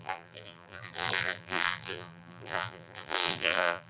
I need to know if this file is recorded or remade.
remade